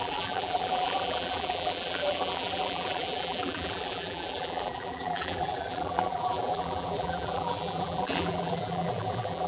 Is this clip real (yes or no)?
no